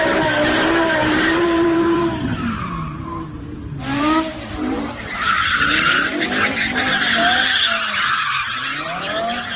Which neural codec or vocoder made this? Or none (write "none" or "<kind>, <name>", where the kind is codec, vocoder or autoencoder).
vocoder, BigVGAN v2